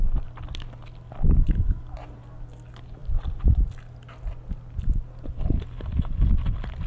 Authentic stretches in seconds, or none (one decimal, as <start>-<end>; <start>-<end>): 0.0-6.9